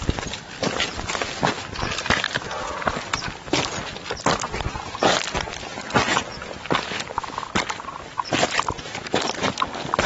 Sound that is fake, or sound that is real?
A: real